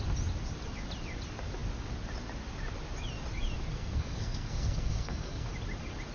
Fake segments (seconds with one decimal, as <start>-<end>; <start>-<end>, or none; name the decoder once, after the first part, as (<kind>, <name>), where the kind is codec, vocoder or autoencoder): 3.7-5.5 (codec, SNAC)